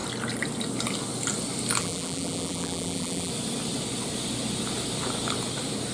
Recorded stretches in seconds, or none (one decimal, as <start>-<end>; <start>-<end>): 0.0-1.8; 3.3-5.9